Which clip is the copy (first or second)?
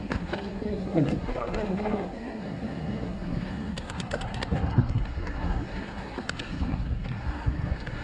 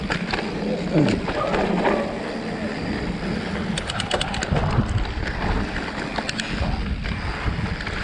first